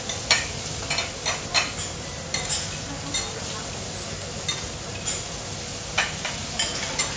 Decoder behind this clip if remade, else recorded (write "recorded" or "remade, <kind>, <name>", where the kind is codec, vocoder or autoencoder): recorded